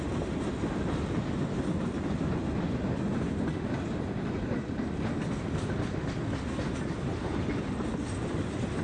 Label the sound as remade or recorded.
recorded